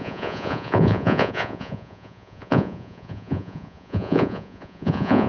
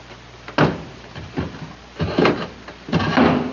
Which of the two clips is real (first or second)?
second